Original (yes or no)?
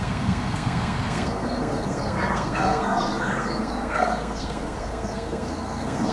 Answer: no